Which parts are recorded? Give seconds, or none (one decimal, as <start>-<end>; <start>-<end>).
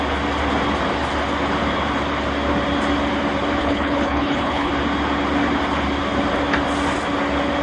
0.0-3.6; 4.7-7.6